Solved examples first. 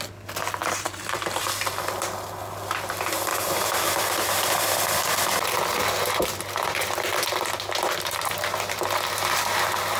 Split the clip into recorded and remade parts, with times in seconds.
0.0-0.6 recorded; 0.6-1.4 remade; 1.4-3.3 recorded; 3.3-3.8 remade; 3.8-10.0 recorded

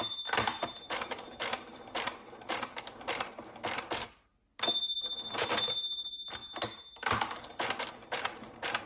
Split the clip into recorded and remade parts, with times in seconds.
0.0-4.3 remade; 4.3-5.3 recorded; 5.3-8.9 remade

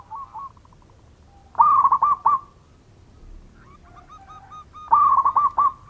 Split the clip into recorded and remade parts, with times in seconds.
0.0-1.4 recorded; 1.4-2.5 remade; 2.5-5.9 recorded

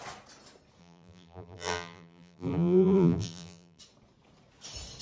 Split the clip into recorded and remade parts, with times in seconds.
0.0-0.8 recorded; 0.8-3.8 remade; 3.8-5.0 recorded

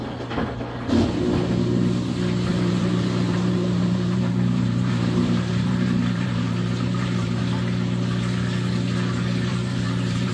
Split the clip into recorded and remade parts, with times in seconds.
0.0-2.5 recorded; 2.5-7.4 remade; 7.4-9.5 recorded; 9.5-10.3 remade

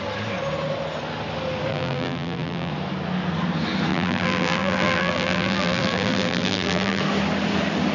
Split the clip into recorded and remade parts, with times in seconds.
0.0-1.7 recorded; 1.7-2.7 remade; 2.7-3.9 recorded; 3.9-7.0 remade; 7.0-7.9 recorded

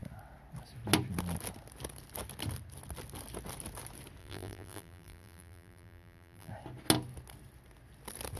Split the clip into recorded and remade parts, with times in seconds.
0.0-4.2 recorded; 4.2-6.5 remade; 6.5-8.4 recorded

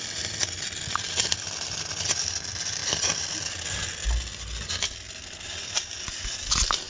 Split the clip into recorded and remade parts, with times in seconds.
0.0-2.8 remade; 2.8-5.6 recorded; 5.6-6.9 remade